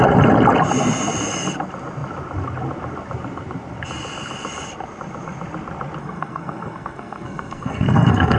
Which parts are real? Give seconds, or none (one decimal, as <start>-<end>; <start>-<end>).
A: 0.0-6.0